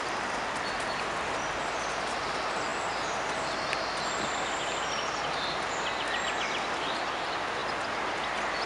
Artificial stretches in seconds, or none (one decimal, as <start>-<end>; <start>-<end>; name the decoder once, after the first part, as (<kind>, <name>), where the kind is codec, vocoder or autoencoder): none